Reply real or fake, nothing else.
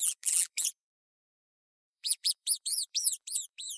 fake